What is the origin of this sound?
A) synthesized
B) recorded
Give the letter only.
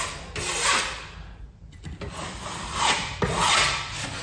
B